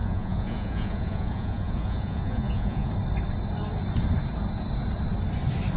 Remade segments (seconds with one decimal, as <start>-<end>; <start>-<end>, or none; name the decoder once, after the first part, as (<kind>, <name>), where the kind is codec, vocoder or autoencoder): 0.0-2.9 (vocoder, Vocos)